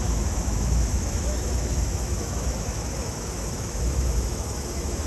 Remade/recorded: remade